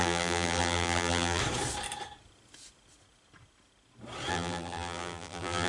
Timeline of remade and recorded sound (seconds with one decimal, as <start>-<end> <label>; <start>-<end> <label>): 0.0-1.4 remade; 1.4-4.3 recorded; 4.3-5.7 remade